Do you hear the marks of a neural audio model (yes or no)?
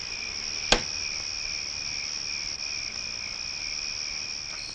no